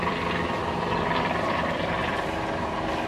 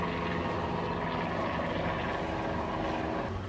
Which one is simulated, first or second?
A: first